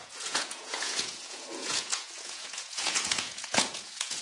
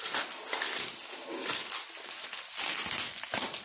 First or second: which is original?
second